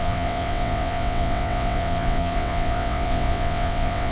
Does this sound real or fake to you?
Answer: fake